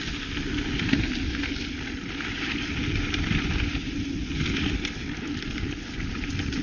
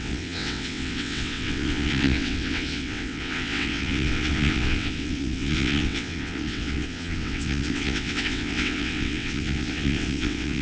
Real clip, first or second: first